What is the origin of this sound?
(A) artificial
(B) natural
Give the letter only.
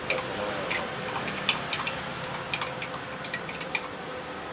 B